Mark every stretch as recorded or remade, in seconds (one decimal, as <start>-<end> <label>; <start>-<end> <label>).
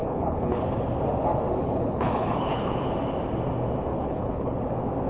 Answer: 0.0-0.6 remade; 0.6-1.6 recorded; 1.6-2.9 remade; 2.9-3.9 recorded; 3.9-4.6 remade; 4.6-5.1 recorded